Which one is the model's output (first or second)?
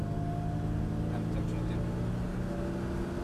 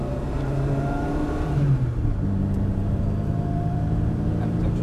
second